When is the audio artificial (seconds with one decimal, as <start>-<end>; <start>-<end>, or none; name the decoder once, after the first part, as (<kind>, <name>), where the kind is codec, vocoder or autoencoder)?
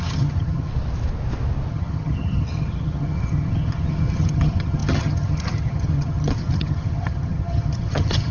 0.0-0.7 (vocoder, HiFi-GAN); 1.7-8.3